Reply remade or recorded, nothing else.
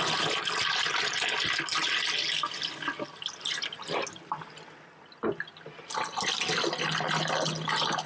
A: recorded